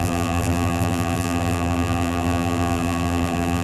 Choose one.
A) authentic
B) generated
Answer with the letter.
B